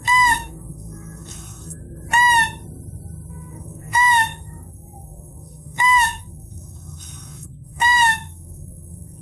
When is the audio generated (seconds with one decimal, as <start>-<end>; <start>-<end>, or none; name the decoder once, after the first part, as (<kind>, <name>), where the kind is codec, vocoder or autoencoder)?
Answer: 0.0-1.8 (codec, SNAC); 3.3-9.2